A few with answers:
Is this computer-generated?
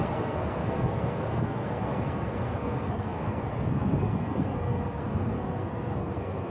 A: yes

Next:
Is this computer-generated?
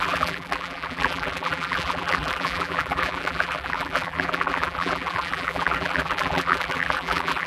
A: yes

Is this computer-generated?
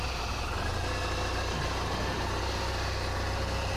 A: no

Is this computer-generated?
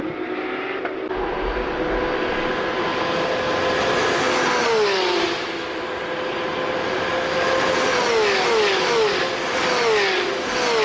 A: no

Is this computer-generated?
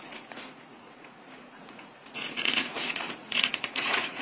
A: yes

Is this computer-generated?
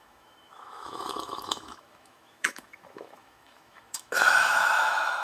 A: yes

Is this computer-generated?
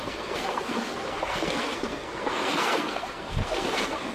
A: yes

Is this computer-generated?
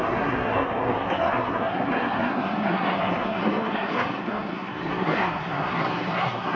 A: yes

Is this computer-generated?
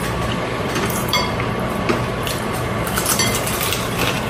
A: yes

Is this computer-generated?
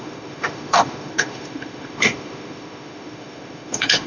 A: yes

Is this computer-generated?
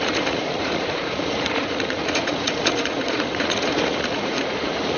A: yes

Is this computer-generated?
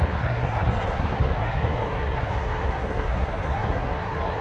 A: yes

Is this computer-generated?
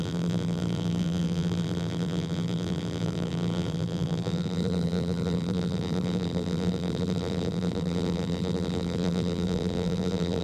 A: yes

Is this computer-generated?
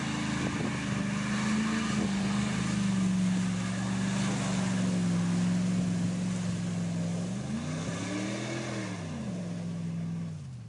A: no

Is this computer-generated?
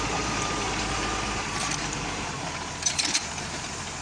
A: yes